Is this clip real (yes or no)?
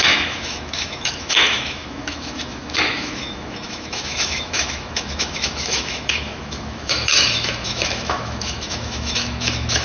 no